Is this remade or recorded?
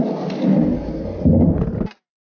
recorded